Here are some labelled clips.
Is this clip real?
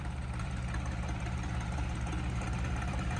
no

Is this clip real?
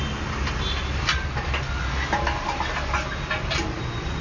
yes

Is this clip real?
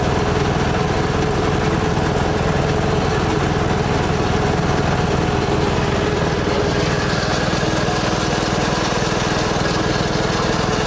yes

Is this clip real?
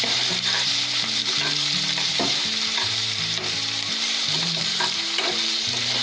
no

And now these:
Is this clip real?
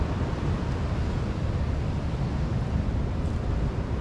yes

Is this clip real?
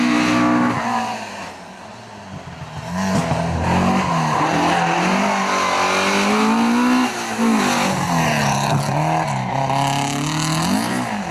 yes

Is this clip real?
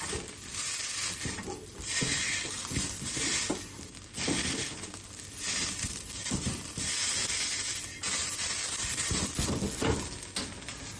yes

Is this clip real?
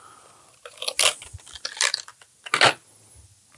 yes